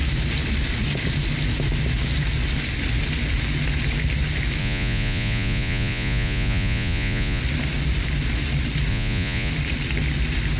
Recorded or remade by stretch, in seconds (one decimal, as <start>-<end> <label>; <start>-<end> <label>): 0.0-4.6 recorded; 4.6-7.4 remade; 7.4-8.9 recorded; 8.9-9.5 remade; 9.5-10.6 recorded